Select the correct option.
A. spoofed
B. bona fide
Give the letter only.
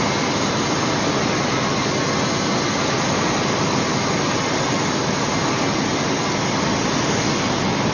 B